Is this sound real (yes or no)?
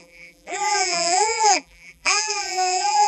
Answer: no